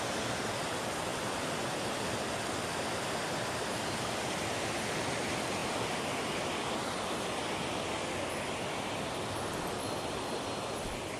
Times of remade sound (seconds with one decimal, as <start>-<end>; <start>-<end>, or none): none